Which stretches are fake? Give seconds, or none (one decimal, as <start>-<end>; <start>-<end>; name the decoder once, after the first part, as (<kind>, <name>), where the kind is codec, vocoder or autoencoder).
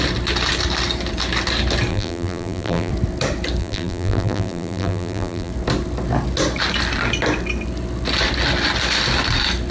1.9-2.9 (vocoder, BigVGAN v2); 3.6-5.5